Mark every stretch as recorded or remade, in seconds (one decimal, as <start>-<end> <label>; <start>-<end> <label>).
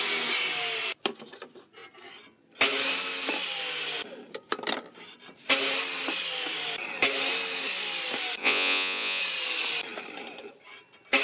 0.0-8.4 recorded; 8.4-9.2 remade; 9.2-11.2 recorded